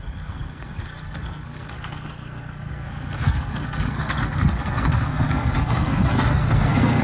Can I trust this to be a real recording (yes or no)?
no